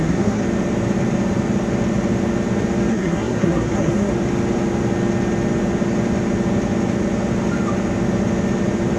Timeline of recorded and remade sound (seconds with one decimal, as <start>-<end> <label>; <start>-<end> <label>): 0.0-0.4 remade; 0.4-2.9 recorded; 2.9-4.1 remade; 4.1-9.0 recorded